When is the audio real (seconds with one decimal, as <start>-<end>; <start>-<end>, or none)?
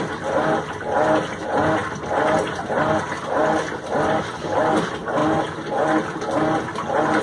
0.0-7.2